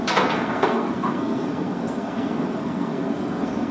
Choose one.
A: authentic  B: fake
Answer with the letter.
B